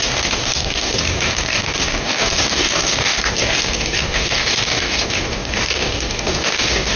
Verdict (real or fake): fake